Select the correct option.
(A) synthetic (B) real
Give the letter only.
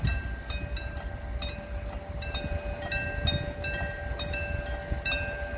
B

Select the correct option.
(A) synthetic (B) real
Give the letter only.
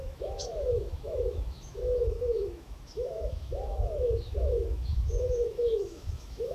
A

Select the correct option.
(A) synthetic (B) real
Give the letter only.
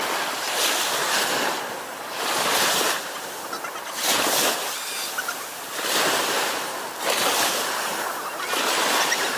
B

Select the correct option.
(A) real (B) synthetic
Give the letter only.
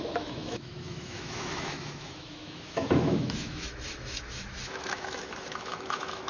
B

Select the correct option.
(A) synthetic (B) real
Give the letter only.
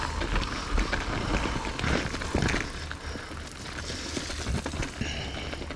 B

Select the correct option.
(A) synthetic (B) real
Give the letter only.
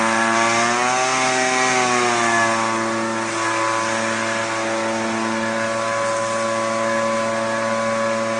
B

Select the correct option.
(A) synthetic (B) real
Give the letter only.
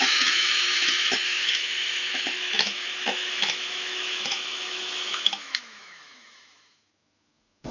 A